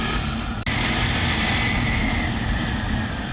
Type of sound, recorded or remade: recorded